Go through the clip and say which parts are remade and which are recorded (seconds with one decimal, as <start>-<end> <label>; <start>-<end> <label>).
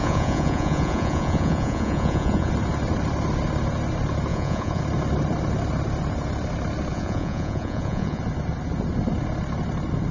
0.0-2.5 remade; 2.5-4.3 recorded; 4.3-4.8 remade; 4.8-6.9 recorded; 6.9-8.2 remade; 8.2-10.1 recorded